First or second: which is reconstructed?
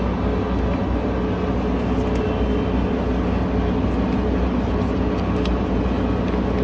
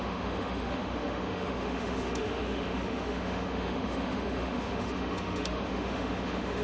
second